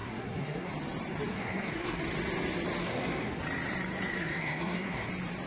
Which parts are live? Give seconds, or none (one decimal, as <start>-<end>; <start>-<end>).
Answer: 0.7-1.3; 2.0-2.8; 3.4-4.2; 5.1-5.5